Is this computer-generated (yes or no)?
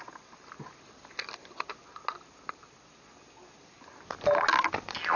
no